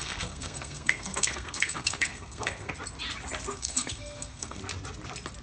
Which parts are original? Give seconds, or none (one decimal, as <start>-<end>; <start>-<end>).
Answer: 2.7-3.5; 4.6-5.4